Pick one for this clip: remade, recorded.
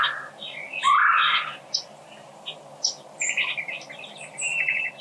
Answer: recorded